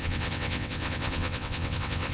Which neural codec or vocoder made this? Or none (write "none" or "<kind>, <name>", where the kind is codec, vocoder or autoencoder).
vocoder, WaveNeXt